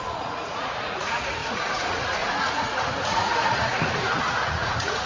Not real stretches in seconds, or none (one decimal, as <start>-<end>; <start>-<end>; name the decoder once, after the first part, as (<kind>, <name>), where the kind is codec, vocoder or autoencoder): 0.0-5.1 (vocoder, Vocos)